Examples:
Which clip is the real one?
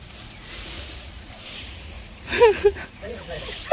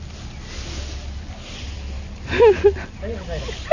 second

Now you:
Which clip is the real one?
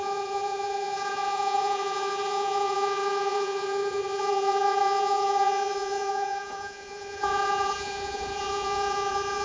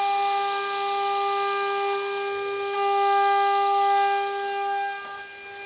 second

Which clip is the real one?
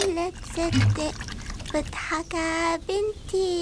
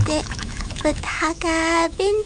first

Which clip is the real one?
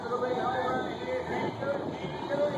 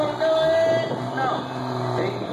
second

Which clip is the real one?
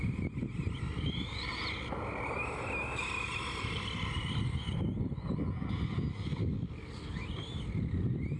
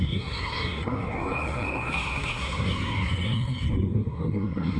first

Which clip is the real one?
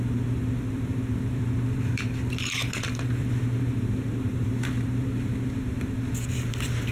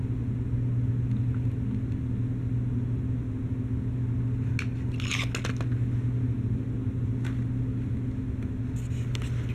second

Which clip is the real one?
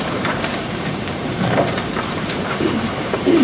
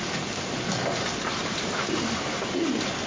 second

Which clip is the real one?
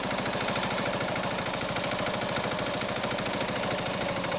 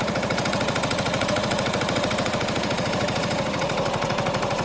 first